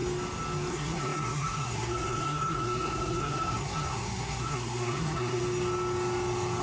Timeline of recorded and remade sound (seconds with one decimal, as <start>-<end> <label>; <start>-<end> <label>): 0.0-0.7 recorded; 0.7-5.4 remade; 5.4-6.6 recorded